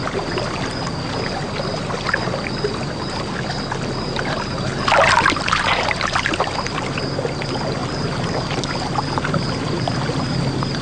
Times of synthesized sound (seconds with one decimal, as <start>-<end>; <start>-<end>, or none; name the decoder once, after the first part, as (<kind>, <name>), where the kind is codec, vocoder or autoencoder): 0.0-0.8 (vocoder, BigVGAN v2)